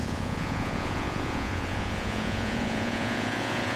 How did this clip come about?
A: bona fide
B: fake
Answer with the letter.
B